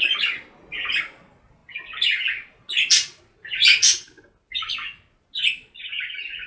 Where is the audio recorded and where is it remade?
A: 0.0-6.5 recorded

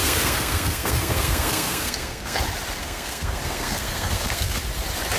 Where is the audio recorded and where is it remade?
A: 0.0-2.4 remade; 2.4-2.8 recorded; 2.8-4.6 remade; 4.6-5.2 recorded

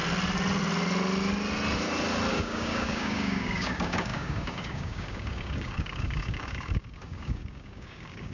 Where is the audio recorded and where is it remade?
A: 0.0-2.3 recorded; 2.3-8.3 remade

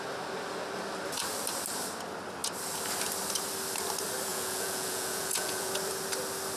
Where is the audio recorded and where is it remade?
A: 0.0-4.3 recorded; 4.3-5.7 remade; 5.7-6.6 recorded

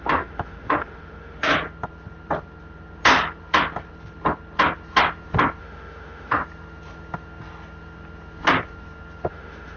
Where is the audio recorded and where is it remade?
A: 0.0-1.5 remade; 1.5-5.6 recorded; 5.6-6.4 remade; 6.4-9.3 recorded; 9.3-9.8 remade

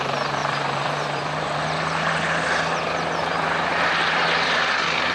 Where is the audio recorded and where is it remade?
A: 0.0-0.4 recorded; 0.4-1.4 remade; 1.4-3.2 recorded; 3.2-4.2 remade; 4.2-5.1 recorded

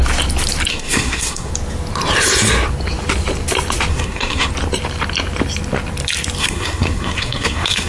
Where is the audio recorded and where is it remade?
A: 0.0-0.7 recorded; 0.7-1.5 remade; 1.5-3.9 recorded; 3.9-4.5 remade; 4.5-6.4 recorded; 6.4-7.9 remade

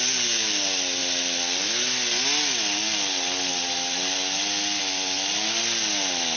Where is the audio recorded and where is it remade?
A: 0.0-6.4 recorded